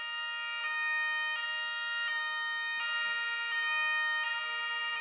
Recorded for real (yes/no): yes